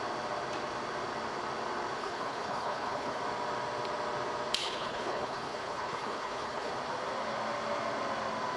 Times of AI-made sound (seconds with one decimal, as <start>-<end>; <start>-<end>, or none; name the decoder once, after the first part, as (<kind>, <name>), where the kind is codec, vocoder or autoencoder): 2.0-3.2 (codec, HILCodec); 4.6-6.7